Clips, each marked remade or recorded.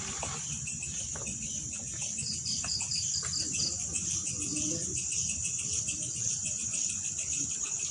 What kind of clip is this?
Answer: recorded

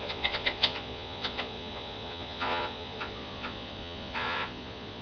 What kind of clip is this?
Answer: remade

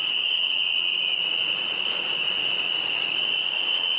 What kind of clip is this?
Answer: remade